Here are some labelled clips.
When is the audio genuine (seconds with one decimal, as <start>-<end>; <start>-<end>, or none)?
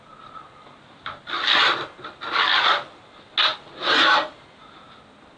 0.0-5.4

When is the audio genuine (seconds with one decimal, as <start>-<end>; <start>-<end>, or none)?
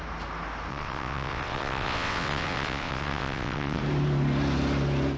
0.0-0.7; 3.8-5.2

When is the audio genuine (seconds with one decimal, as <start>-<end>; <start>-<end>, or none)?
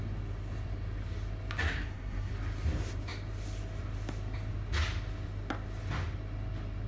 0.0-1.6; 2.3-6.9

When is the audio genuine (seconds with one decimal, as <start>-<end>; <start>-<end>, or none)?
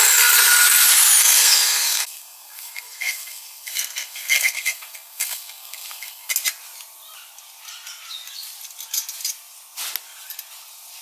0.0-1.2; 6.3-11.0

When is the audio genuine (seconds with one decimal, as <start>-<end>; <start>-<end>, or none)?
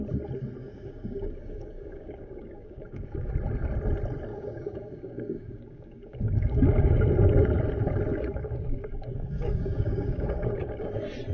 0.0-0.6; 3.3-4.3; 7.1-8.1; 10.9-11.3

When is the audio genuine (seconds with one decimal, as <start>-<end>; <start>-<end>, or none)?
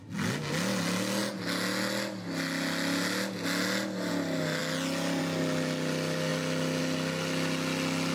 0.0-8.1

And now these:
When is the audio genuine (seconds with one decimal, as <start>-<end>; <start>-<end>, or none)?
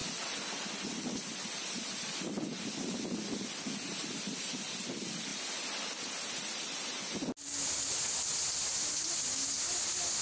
0.0-10.2